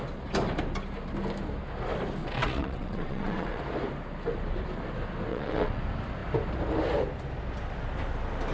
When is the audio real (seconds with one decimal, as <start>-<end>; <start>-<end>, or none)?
0.0-2.2; 3.6-5.3; 5.8-8.5